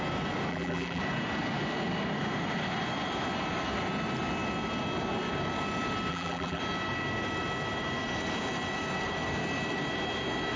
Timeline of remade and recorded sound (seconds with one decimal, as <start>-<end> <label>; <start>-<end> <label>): 0.0-0.5 recorded; 0.5-1.0 remade; 1.0-6.1 recorded; 6.1-6.6 remade; 6.6-10.6 recorded